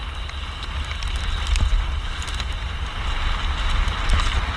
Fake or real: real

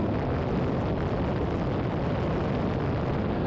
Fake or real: real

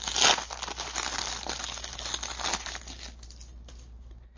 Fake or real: real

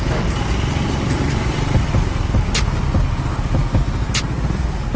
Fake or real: real